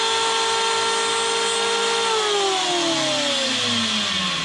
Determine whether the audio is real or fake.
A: real